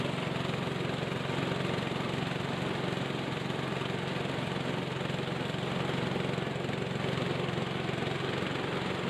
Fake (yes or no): no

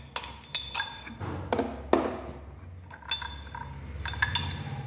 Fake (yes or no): no